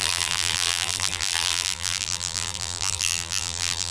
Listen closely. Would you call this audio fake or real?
fake